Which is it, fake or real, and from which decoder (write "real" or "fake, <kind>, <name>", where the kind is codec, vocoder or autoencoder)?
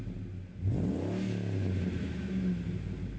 real